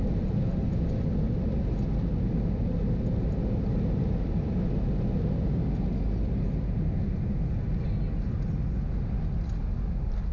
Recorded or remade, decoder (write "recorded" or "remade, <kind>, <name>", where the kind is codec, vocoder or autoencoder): recorded